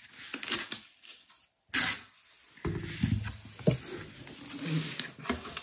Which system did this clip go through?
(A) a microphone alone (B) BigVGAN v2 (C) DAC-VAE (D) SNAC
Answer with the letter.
A